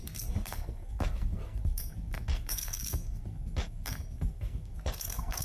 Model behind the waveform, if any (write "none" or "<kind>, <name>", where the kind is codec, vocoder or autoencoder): codec, SNAC